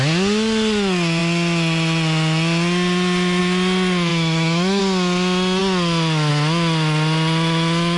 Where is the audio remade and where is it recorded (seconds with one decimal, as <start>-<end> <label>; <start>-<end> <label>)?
0.0-4.1 recorded; 4.1-4.8 remade; 4.8-8.0 recorded